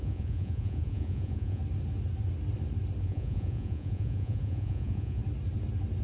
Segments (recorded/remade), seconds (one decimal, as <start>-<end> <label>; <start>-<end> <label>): 0.0-1.6 remade; 1.6-3.0 recorded; 3.0-5.2 remade; 5.2-6.0 recorded